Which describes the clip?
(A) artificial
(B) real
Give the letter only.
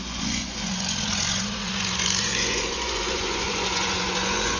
A